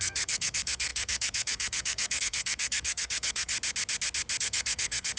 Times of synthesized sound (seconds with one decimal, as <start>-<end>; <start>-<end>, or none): 0.0-3.5; 4.4-5.2